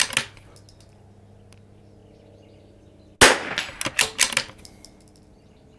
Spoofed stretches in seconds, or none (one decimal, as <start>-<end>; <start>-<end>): none